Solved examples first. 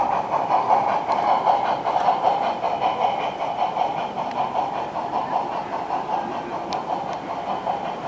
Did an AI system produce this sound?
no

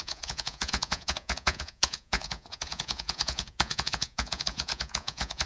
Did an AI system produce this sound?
yes